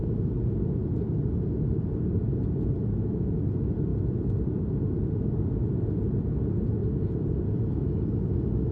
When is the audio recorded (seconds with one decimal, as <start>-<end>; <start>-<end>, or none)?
2.8-3.9; 4.7-6.8; 7.8-8.7